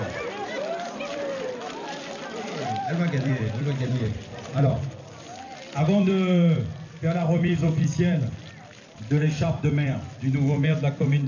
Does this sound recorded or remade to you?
remade